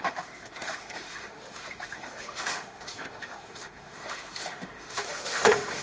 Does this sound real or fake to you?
fake